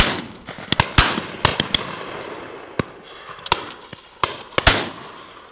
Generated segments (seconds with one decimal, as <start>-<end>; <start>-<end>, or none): 3.9-4.5